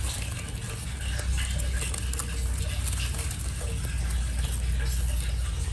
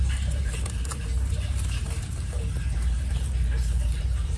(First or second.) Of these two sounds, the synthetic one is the second